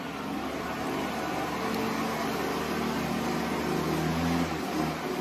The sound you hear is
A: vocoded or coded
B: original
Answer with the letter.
B